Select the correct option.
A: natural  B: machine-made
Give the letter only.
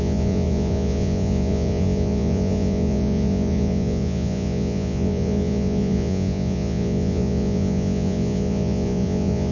B